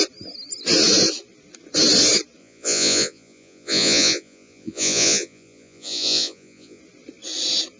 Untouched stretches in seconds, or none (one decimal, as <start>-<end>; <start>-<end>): 0.0-2.4; 6.8-7.8